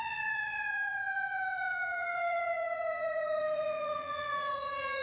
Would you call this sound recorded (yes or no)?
no